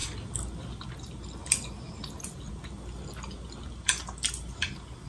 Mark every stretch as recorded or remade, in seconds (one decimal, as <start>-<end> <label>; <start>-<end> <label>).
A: 0.0-5.1 recorded